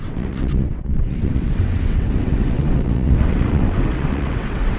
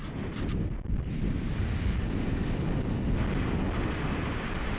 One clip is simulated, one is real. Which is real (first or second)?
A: second